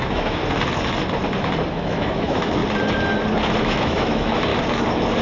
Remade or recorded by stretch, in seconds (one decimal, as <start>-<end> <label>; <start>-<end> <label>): 0.0-0.4 remade; 0.4-1.7 recorded; 1.7-2.6 remade; 2.6-3.6 recorded; 3.6-4.5 remade; 4.5-5.2 recorded